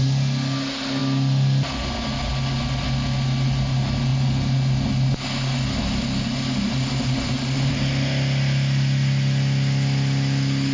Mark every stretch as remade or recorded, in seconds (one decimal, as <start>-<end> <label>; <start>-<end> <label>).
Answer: 0.0-10.7 recorded